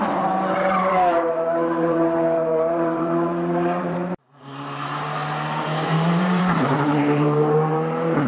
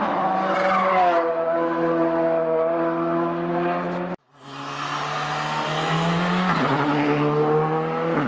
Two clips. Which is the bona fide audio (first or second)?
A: second